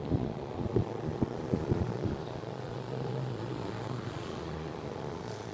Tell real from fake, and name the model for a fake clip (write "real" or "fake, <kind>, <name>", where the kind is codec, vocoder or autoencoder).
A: fake, vocoder, Vocos